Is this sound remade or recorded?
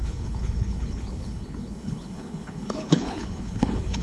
remade